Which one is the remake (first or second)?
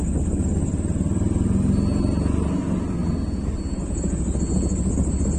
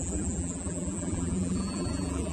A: second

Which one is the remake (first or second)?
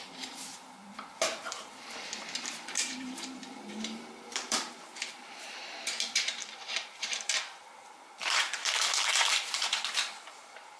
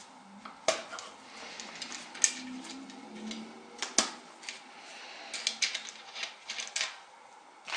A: first